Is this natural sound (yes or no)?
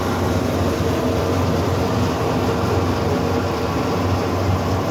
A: yes